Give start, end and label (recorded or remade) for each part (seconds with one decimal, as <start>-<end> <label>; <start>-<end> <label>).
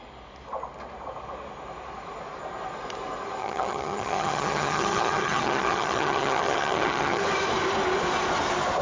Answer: 0.0-3.4 recorded; 3.4-7.2 remade; 7.2-8.8 recorded